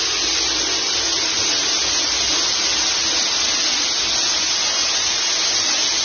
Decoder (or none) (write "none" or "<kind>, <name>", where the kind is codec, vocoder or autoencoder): none